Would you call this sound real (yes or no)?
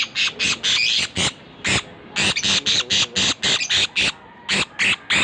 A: yes